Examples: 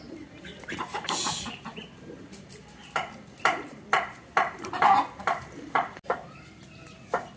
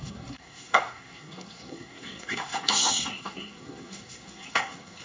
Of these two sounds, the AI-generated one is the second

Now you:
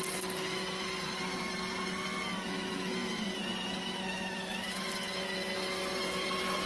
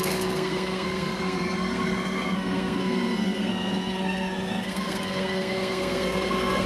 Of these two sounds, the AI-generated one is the second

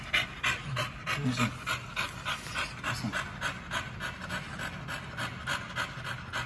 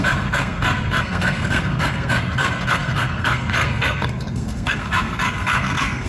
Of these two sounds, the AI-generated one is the second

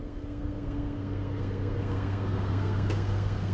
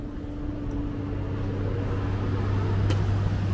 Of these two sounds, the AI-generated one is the first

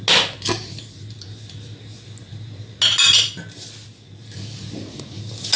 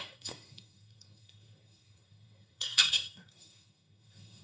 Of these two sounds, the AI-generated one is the second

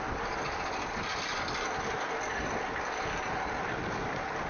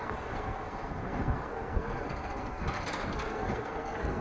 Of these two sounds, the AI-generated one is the second